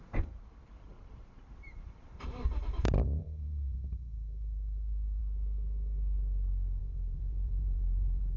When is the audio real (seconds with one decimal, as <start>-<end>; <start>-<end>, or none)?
5.2-6.8